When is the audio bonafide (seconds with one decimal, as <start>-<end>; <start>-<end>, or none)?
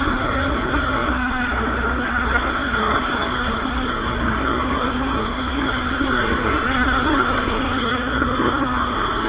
none